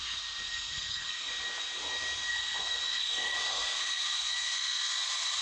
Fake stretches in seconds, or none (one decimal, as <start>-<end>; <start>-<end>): 0.5-1.3; 2.3-5.0

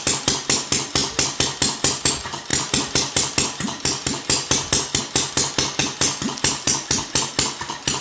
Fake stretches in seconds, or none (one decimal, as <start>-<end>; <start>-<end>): none